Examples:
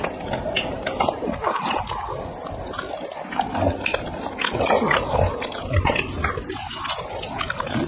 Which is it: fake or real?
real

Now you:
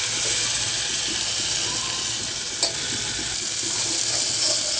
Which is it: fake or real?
real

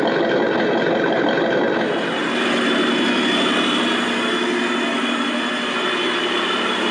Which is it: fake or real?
real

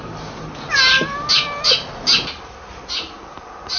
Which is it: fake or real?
real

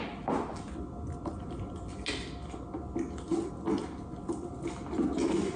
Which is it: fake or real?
real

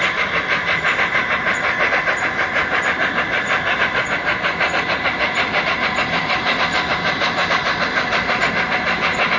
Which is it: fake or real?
real